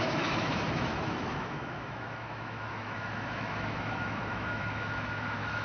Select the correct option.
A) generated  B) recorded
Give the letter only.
A